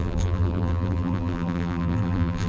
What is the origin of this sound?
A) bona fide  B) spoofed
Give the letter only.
B